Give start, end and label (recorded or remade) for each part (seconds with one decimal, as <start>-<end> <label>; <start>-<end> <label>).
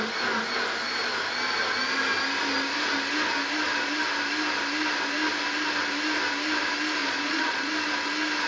0.0-7.0 recorded; 7.0-7.7 remade; 7.7-8.5 recorded